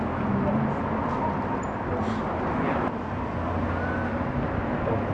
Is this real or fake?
real